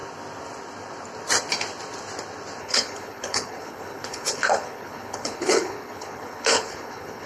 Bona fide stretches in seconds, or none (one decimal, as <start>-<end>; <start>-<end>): 0.0-2.6